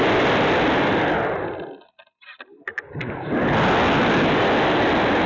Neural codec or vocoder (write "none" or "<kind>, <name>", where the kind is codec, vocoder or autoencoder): none